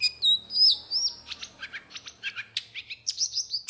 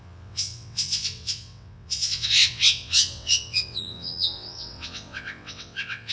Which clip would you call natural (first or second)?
first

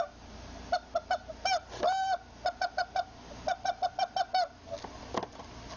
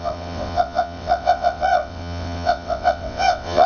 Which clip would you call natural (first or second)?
first